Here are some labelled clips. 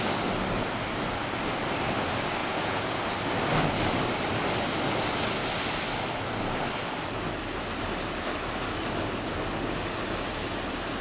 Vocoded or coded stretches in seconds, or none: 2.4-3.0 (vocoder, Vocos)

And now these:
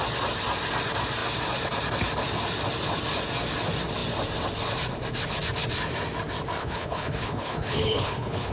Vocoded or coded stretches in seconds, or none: 6.6-8.5 (codec, HILCodec)

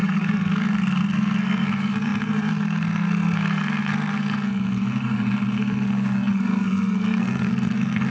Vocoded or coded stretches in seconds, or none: 0.0-8.1 (codec, SNAC)